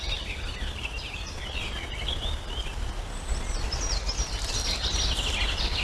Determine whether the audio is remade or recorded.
recorded